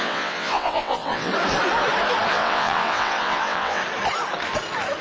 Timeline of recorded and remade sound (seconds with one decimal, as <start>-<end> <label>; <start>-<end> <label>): 0.0-1.3 remade; 1.3-2.3 recorded; 2.3-3.8 remade; 3.8-5.0 recorded